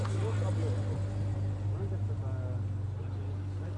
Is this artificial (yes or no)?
no